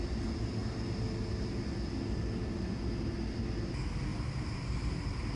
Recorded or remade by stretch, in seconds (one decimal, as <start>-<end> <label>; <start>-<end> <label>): 0.0-4.1 recorded; 4.1-5.3 remade